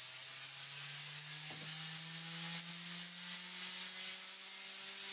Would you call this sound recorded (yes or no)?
yes